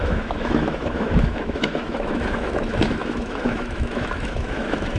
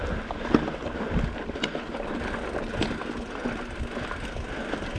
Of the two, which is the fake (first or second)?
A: first